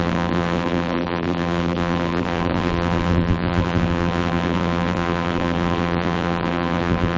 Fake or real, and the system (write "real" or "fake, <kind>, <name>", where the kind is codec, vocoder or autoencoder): fake, vocoder, BigVGAN v2